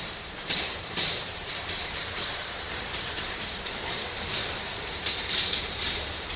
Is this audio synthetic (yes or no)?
yes